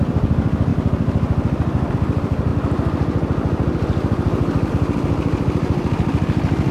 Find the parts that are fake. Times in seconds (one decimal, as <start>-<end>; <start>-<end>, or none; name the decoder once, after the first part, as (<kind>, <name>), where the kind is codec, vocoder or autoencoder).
0.0-0.7 (vocoder, BigVGAN v2); 1.9-2.5; 4.7-6.7